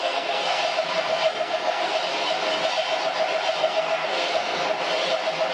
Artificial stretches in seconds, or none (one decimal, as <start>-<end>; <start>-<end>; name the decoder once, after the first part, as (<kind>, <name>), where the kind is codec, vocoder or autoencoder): 0.0-0.6 (codec, SNAC); 1.1-1.9; 3.6-4.6